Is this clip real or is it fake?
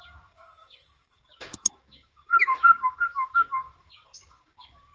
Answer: fake